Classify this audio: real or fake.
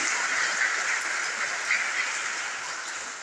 real